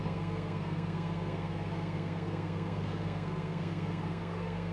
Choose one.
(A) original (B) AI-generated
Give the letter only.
B